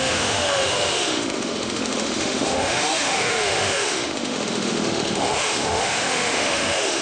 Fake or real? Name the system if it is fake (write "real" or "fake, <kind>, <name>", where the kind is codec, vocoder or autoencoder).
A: fake, autoencoder, DAC-VAE